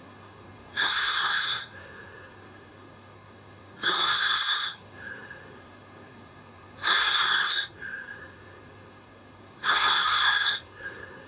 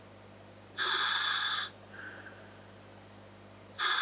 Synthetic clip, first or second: first